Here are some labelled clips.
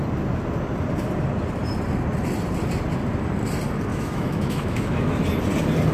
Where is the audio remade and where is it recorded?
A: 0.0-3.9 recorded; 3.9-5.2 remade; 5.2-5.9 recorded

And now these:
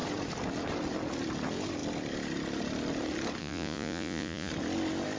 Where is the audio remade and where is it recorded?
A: 0.0-3.4 recorded; 3.4-4.5 remade; 4.5-5.2 recorded